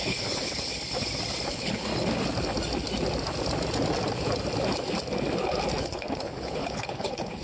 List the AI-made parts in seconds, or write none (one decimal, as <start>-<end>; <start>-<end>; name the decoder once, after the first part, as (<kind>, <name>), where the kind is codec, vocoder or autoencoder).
0.0-0.7 (codec, HILCodec); 1.5-1.9; 5.8-7.4